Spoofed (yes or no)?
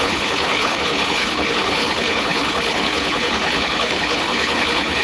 yes